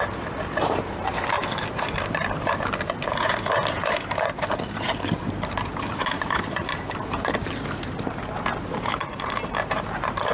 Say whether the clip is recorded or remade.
remade